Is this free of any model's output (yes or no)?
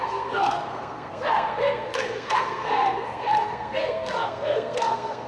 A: no